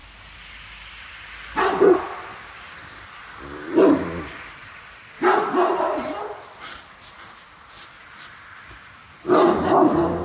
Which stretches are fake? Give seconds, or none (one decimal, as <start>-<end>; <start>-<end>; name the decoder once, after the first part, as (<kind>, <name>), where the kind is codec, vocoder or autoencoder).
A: none